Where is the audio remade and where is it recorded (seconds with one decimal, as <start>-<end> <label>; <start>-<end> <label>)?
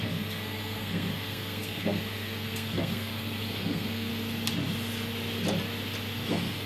0.0-4.1 remade; 4.1-6.3 recorded; 6.3-6.7 remade